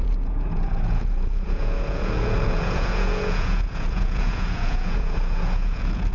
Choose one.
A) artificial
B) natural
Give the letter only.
A